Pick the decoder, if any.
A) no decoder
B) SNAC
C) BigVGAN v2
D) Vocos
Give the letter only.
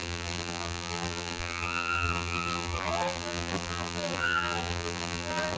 C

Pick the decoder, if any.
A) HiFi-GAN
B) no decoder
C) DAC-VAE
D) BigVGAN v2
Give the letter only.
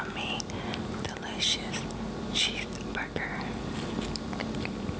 B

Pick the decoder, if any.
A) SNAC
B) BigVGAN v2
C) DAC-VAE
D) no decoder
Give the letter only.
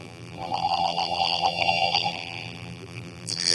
B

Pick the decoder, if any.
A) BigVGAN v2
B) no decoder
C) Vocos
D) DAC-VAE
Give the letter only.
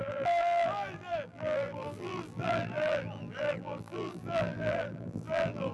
A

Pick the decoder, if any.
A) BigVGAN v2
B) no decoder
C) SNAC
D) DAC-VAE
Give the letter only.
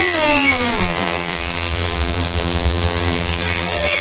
A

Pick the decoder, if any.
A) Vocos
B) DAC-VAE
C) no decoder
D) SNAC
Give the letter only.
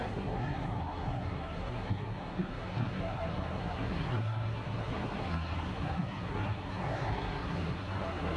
D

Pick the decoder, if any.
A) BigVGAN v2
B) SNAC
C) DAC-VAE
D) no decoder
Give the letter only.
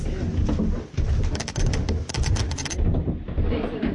D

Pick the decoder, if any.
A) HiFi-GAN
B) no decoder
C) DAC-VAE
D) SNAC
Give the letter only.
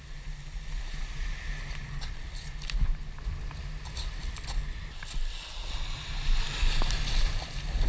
B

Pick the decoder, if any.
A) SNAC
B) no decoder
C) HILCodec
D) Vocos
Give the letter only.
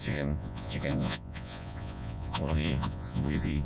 D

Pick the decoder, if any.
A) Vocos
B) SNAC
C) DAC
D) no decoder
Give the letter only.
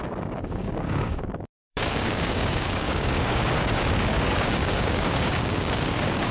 C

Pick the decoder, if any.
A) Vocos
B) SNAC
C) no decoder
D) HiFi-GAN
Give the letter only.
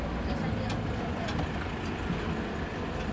C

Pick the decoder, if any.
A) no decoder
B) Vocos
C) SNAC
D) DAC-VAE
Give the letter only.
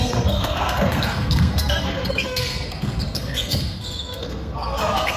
C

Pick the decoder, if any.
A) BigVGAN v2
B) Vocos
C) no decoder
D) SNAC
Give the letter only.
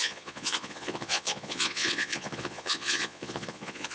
B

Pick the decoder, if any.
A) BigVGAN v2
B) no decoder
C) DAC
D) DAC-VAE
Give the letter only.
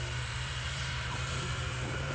A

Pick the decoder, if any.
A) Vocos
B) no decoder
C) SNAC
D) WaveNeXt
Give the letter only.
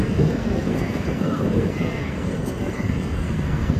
C